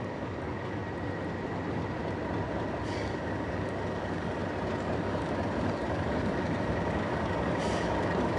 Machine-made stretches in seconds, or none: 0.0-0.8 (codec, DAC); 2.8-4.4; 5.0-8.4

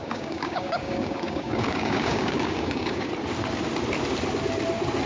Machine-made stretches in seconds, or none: 0.0-3.1 (codec, DAC)

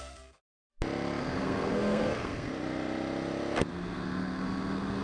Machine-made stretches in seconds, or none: 0.0-0.6 (codec, SNAC); 1.2-2.5; 3.7-5.0

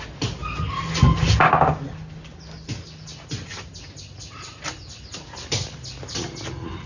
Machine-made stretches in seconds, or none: none

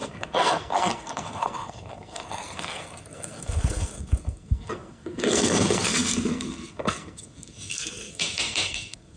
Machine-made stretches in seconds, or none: 0.0-9.2 (codec, SNAC)

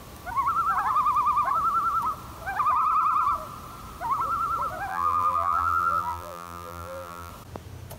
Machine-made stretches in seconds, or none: 4.9-7.3 (vocoder, BigVGAN v2)

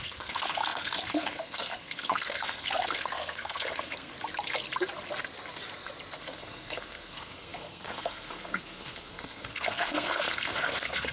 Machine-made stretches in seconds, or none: 0.0-4.1 (codec, SNAC); 6.2-11.1

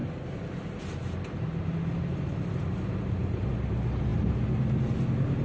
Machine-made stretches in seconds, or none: none